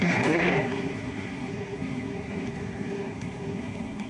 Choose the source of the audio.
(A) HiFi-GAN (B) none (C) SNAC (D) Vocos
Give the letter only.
C